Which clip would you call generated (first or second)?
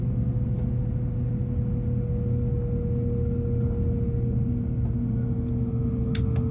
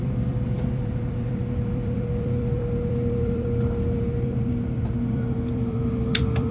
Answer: second